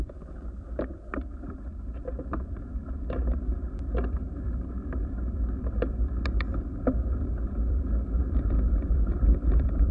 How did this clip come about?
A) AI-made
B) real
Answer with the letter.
A